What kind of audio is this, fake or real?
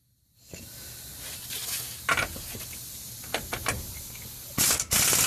real